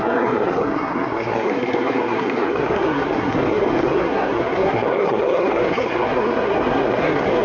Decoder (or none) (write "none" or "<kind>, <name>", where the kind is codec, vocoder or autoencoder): codec, SNAC